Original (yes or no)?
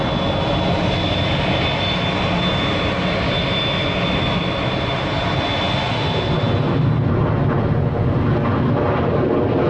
yes